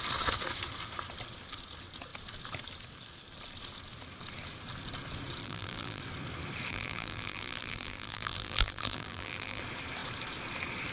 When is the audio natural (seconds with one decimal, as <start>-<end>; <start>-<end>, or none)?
0.0-5.4; 6.0-6.7; 9.6-10.9